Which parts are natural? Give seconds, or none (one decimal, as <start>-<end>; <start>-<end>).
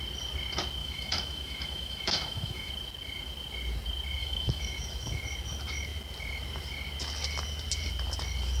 0.0-0.8; 2.7-4.2; 5.2-8.6